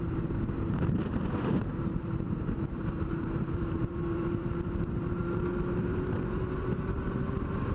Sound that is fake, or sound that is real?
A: fake